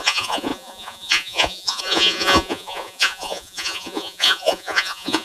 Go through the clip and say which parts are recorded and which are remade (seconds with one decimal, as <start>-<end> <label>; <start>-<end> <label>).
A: 0.0-5.2 remade